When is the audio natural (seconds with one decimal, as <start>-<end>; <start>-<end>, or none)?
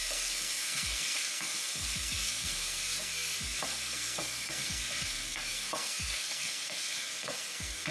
none